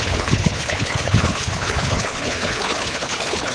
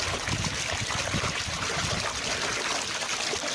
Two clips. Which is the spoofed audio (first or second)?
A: first